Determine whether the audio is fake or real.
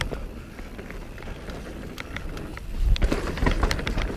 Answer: real